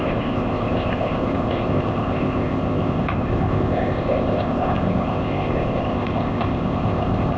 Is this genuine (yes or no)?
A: no